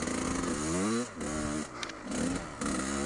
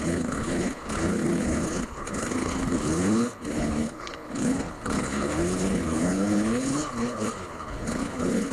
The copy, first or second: second